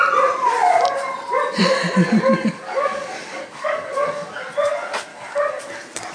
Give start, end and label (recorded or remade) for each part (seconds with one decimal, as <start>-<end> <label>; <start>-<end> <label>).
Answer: 0.0-2.0 recorded; 2.0-4.3 remade; 4.3-5.1 recorded; 5.1-5.6 remade; 5.6-6.1 recorded